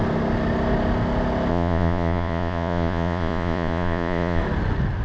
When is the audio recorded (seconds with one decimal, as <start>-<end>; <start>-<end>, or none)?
0.0-1.5; 4.4-5.0